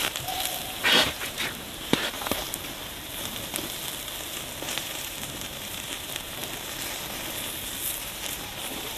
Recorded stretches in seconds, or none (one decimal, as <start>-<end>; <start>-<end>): 2.4-4.8; 6.4-8.0

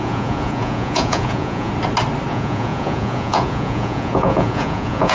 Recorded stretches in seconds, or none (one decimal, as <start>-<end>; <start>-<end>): 1.7-2.3

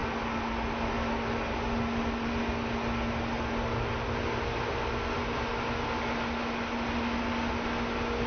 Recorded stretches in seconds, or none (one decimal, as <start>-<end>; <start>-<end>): 0.0-8.3

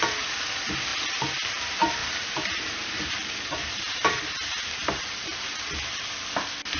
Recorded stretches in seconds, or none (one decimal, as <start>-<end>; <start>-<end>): 0.0-2.0; 6.1-6.8

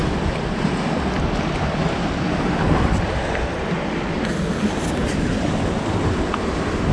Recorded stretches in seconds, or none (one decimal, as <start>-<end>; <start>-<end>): 0.0-6.9